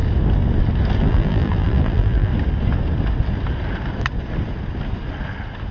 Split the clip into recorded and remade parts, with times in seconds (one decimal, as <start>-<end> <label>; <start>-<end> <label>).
0.0-1.0 recorded; 1.0-2.3 remade; 2.3-5.7 recorded